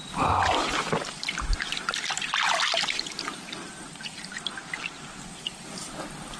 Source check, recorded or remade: recorded